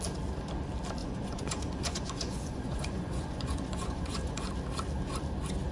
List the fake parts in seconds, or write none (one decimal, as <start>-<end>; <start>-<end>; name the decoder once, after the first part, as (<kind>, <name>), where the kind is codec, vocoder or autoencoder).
1.0-4.4 (vocoder, Vocos)